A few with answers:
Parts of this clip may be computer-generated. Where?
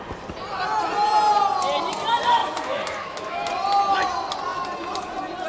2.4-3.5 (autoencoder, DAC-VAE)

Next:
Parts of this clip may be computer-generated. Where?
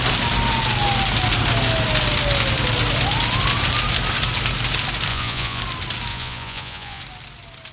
5.1-5.6 (vocoder, Vocos); 6.1-7.0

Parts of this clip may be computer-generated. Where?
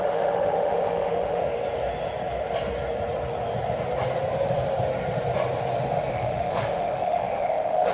0.0-1.4 (autoencoder, DAC-VAE); 6.1-7.9